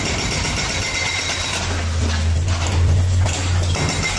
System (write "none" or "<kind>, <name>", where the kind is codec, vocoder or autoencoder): none